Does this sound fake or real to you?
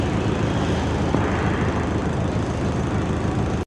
real